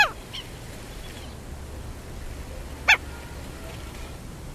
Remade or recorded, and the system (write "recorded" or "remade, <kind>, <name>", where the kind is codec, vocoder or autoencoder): recorded